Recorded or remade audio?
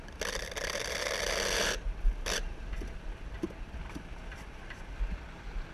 recorded